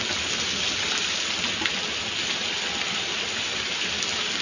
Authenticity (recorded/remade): remade